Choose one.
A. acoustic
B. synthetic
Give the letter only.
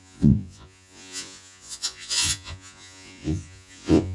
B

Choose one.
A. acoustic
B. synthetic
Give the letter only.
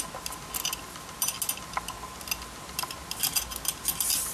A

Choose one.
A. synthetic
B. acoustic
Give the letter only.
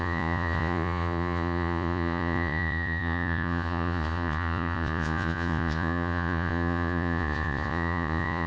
A